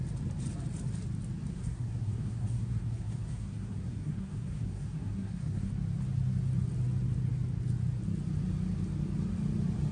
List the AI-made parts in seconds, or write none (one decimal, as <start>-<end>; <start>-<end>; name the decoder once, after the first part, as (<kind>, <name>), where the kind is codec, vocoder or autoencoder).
1.5-5.7 (codec, SNAC)